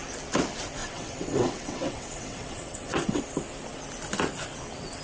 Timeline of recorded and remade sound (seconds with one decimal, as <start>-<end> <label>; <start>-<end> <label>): 0.0-0.8 recorded; 0.8-3.2 remade; 3.2-5.0 recorded